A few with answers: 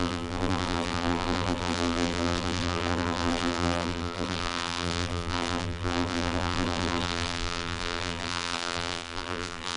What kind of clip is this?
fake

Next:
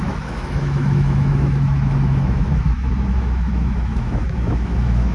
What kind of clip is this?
fake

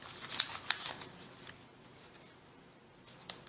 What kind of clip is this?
real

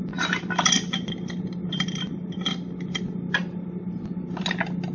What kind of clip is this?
real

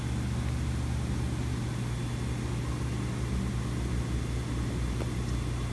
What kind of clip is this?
real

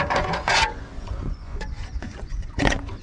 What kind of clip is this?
fake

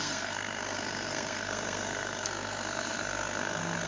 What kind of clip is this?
fake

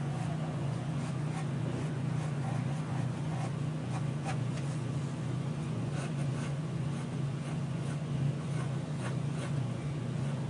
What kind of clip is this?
fake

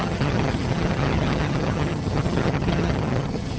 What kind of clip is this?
fake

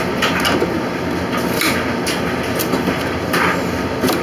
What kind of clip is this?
real